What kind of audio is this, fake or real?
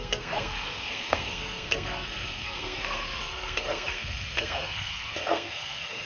fake